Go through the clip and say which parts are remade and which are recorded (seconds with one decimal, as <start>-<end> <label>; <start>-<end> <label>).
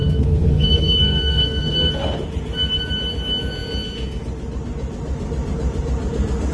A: 0.0-1.9 remade; 1.9-6.5 recorded